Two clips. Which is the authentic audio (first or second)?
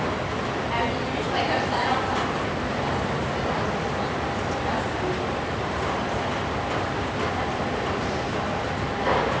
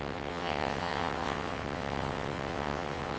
first